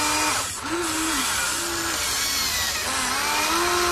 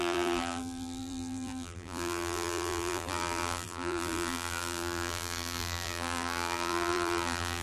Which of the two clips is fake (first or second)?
second